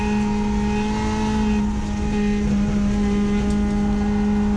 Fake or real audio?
real